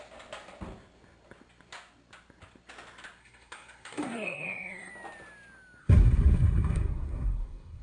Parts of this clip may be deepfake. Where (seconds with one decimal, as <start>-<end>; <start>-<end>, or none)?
3.2-4.9; 5.8-7.8